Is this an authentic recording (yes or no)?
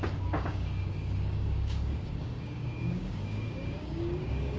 no